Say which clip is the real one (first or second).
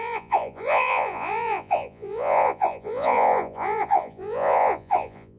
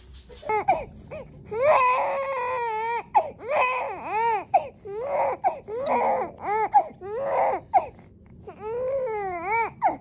second